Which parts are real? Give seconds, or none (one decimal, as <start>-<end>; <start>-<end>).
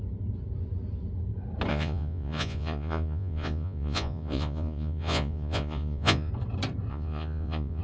0.0-1.7; 6.3-6.9